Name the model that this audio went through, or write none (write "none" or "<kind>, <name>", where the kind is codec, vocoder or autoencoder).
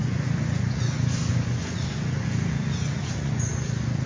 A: vocoder, Vocos